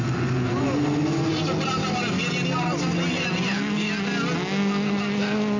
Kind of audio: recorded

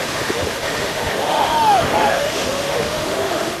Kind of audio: remade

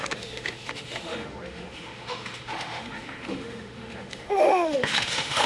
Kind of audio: remade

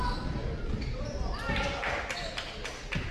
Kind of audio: recorded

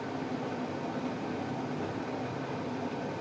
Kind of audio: recorded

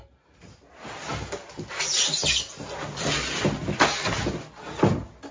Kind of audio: recorded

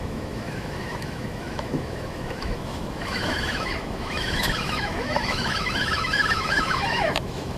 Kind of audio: remade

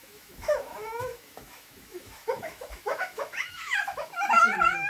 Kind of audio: remade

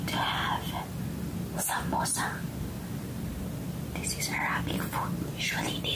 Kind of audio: recorded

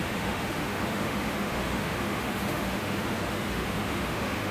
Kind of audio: remade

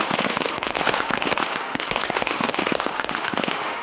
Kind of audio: remade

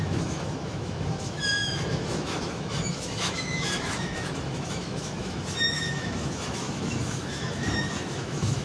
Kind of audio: remade